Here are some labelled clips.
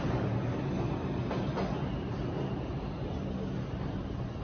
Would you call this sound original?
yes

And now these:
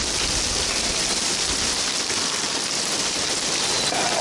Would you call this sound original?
yes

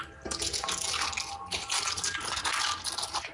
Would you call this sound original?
yes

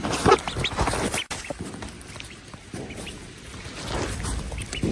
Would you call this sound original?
yes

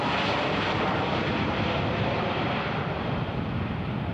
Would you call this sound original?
no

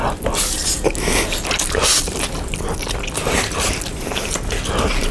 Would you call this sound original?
yes